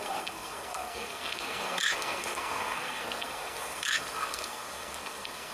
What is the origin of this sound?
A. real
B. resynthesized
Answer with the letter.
B